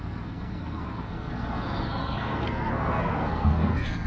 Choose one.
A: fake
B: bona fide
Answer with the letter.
A